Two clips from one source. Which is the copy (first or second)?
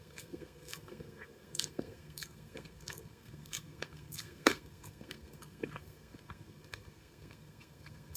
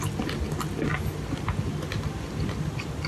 first